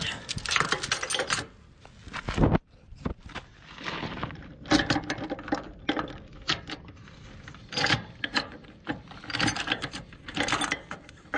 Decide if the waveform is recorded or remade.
recorded